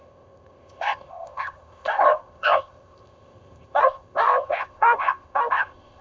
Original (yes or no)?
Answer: no